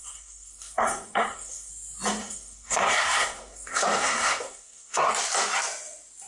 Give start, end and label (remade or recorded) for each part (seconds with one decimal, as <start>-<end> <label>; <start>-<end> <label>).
0.0-1.7 remade; 1.7-2.2 recorded; 2.2-5.1 remade; 5.1-6.3 recorded